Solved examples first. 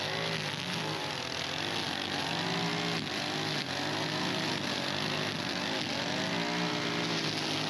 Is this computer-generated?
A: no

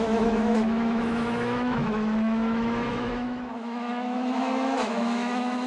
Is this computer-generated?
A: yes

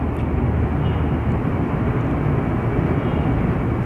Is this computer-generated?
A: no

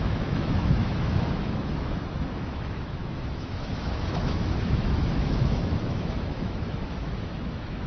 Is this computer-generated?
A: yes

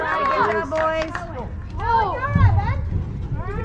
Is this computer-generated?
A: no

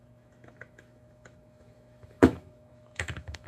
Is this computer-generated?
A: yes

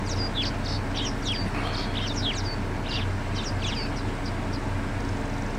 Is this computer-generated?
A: no